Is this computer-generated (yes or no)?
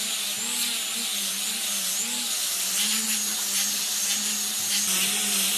no